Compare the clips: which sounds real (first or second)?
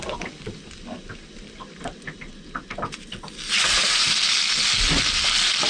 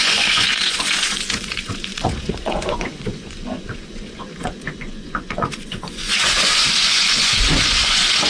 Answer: first